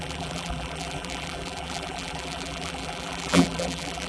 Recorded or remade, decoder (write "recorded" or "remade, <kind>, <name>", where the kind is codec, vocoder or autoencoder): remade, vocoder, BigVGAN v2